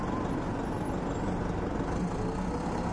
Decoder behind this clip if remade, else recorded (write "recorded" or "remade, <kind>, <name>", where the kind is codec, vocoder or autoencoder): recorded